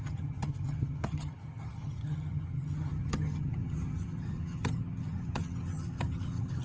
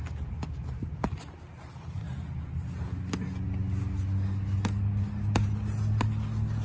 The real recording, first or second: second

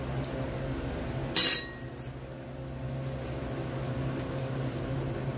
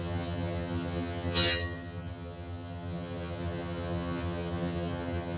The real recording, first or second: first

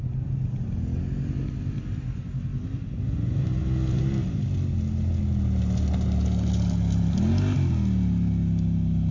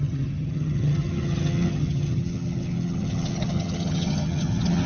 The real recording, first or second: first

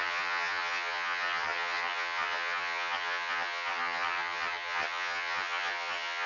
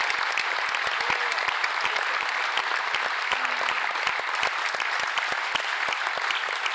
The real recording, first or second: second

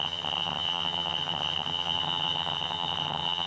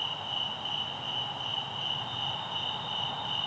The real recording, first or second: second